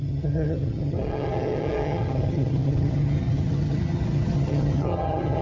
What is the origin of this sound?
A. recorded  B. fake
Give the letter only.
B